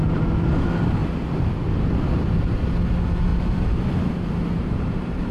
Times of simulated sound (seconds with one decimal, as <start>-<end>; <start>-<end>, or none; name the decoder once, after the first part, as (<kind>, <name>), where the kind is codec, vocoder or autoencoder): 3.3-5.3 (vocoder, BigVGAN v2)